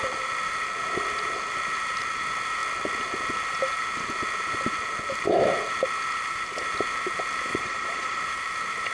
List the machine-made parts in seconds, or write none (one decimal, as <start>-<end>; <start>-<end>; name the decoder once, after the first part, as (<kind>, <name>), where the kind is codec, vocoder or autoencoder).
7.5-8.2 (vocoder, Vocos)